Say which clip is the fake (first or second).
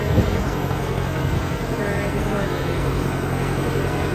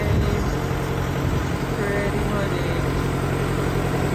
first